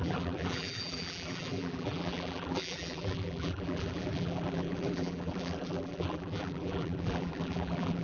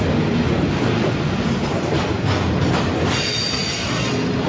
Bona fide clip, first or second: second